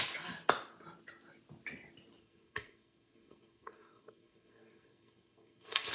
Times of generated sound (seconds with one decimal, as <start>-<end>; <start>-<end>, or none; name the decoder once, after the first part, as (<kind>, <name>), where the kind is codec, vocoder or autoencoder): 2.2-5.9 (codec, SNAC)